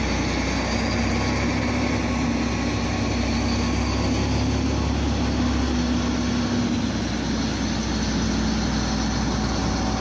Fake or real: real